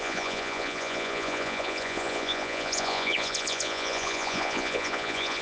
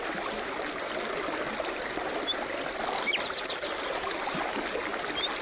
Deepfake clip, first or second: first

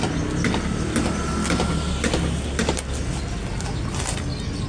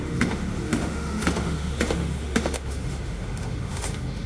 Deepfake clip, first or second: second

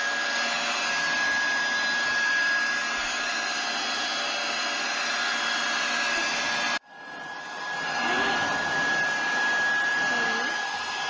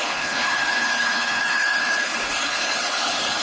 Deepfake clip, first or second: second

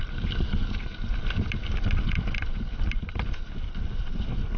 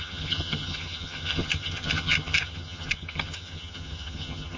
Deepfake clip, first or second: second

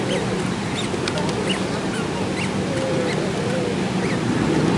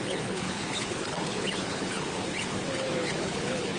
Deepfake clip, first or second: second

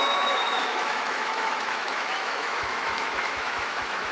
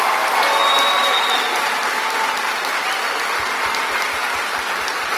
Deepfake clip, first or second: first